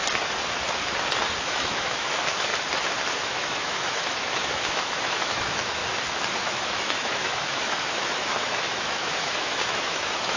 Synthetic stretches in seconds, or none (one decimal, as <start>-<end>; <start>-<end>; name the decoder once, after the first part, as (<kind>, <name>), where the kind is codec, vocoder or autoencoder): 1.4-2.5 (autoencoder, DAC-VAE); 3.2-5.8; 6.3-10.4